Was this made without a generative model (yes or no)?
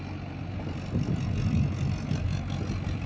yes